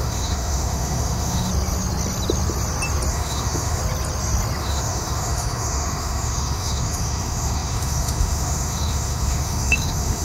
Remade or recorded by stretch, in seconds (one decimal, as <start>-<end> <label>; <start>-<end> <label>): 0.0-1.5 remade; 1.5-3.1 recorded; 3.1-3.8 remade; 3.8-4.6 recorded; 4.6-10.2 remade